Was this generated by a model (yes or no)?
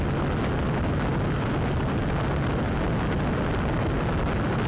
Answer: no